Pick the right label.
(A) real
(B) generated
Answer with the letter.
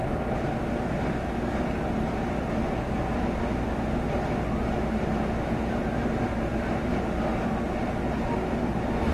A